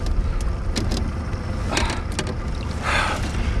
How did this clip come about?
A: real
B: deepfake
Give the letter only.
A